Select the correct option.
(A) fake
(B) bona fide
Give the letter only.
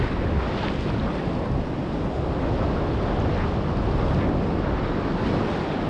B